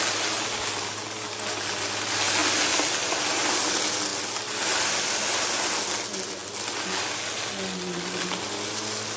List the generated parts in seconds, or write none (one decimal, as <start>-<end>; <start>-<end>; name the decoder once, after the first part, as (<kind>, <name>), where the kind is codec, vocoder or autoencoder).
none